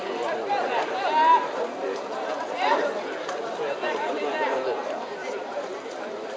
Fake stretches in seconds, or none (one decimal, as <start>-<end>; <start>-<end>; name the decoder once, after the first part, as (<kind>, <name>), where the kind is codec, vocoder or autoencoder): 2.3-4.2 (vocoder, BigVGAN v2); 5.2-6.4